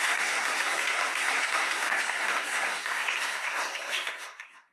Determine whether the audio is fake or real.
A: fake